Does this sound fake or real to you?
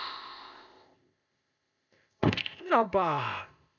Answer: fake